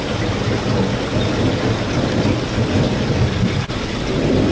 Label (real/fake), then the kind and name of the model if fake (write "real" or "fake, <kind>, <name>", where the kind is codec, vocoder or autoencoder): real